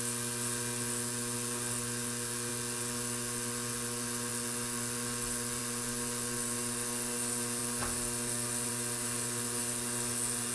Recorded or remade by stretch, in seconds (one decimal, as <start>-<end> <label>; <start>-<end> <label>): 0.0-10.5 recorded